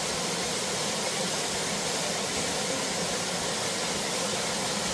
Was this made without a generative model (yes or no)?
yes